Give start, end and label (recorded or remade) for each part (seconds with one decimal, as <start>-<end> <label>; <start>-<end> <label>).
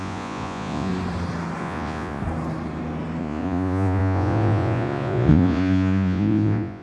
0.0-0.9 remade; 0.9-1.6 recorded; 1.6-2.2 remade; 2.2-3.2 recorded; 3.2-6.8 remade